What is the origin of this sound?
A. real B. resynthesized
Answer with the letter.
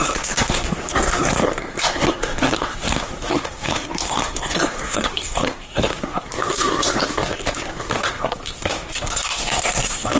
B